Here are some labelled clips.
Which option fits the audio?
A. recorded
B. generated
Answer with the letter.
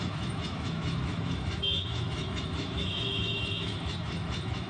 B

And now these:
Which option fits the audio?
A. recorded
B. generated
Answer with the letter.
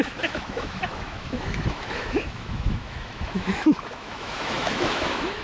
B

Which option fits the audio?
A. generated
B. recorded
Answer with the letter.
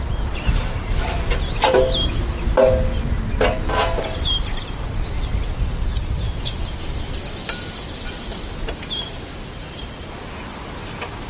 B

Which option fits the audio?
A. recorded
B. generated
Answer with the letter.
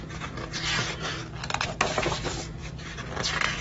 A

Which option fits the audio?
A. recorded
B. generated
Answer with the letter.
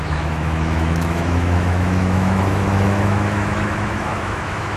B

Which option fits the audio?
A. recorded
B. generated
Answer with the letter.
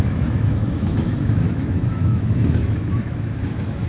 B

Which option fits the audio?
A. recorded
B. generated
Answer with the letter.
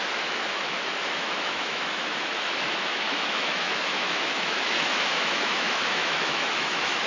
B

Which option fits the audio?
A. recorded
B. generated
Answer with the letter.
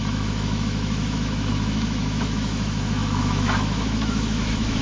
B